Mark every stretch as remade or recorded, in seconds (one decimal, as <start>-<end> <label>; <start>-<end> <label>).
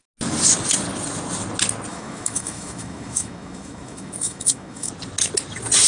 0.0-1.9 recorded; 1.9-4.9 remade; 4.9-5.9 recorded